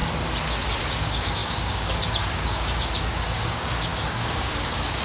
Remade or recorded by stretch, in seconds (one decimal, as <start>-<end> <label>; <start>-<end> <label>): 0.0-0.8 recorded; 0.8-5.0 remade